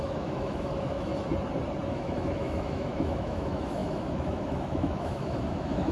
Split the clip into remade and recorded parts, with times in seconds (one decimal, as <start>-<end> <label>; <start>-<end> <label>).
0.0-1.1 remade; 1.1-1.9 recorded; 1.9-5.9 remade